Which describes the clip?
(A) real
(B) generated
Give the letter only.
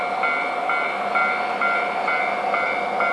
A